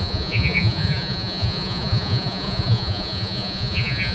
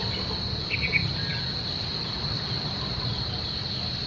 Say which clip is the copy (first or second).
first